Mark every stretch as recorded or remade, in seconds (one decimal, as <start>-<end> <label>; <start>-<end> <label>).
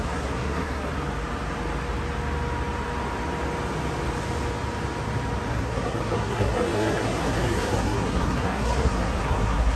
0.0-0.9 remade; 0.9-5.5 recorded; 5.5-9.8 remade